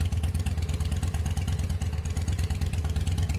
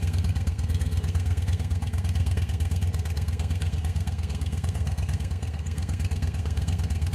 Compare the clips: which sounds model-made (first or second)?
second